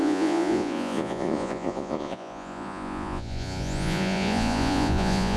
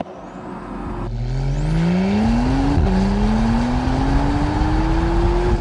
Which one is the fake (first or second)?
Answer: first